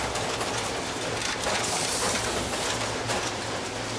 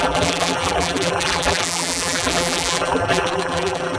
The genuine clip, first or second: first